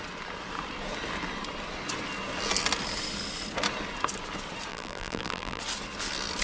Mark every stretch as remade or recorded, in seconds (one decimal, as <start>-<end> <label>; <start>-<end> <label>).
0.0-4.7 recorded; 4.7-5.6 remade; 5.6-6.4 recorded